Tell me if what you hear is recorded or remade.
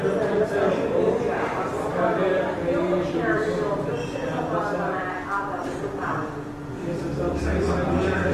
remade